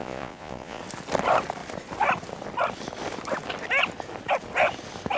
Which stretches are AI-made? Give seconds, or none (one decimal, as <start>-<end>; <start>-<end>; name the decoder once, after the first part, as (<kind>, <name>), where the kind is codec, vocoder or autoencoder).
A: 0.0-0.8 (vocoder, Vocos)